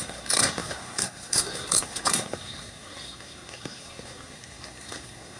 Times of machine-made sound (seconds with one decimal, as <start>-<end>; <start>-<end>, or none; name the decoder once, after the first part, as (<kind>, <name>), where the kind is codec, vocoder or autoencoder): 0.0-5.4 (codec, SNAC)